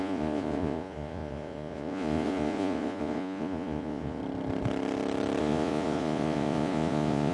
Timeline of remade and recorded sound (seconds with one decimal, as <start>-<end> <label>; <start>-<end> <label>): 0.0-4.2 remade; 4.2-5.4 recorded; 5.4-7.3 remade